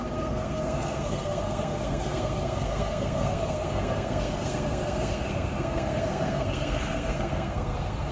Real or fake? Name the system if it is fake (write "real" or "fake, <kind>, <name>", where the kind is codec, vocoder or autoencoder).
fake, codec, SNAC